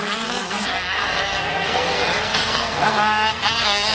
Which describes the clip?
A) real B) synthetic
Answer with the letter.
B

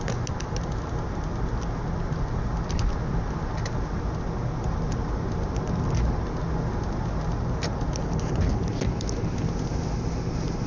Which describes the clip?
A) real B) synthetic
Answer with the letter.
A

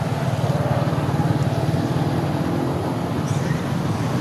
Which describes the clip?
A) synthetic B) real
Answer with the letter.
B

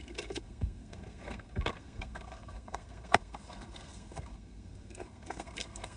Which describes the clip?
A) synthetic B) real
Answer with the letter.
A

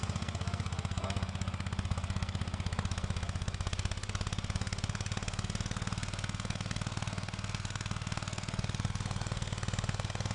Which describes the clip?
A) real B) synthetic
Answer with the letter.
B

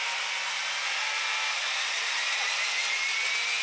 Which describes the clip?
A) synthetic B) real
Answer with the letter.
B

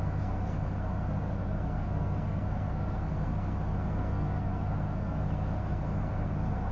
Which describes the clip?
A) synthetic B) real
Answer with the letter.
A